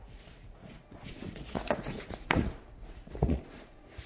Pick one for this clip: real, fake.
fake